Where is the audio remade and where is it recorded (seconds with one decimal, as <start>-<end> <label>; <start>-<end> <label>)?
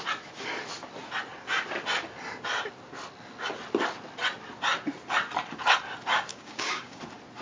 0.0-6.3 recorded; 6.3-7.0 remade; 7.0-7.4 recorded